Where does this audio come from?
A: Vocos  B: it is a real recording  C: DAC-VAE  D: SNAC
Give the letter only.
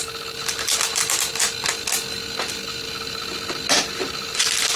B